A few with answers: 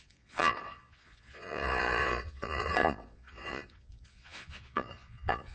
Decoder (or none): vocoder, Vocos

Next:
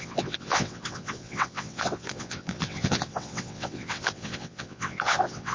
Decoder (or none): vocoder, WaveNeXt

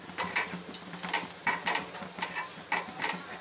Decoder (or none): none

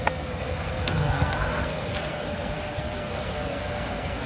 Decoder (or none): codec, SNAC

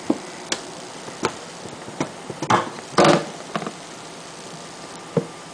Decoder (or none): none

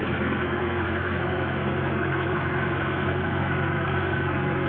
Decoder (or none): codec, SNAC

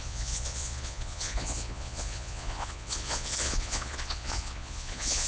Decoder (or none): vocoder, Vocos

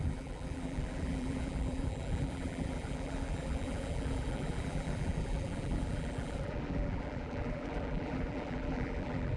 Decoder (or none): vocoder, BigVGAN v2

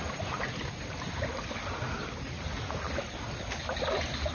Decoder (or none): none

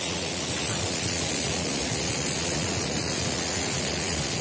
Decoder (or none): vocoder, Vocos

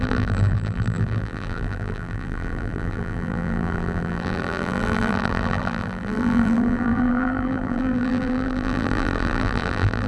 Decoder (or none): vocoder, BigVGAN v2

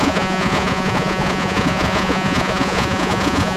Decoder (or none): vocoder, Vocos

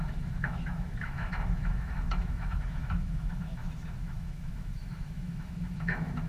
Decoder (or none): autoencoder, DAC-VAE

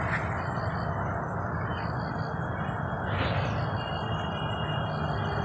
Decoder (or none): none